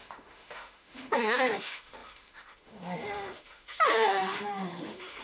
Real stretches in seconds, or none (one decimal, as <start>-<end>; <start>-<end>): none

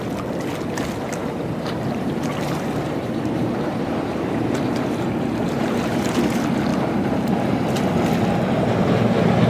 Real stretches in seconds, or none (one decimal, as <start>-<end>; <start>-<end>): 0.0-1.2; 6.2-6.7; 7.3-9.5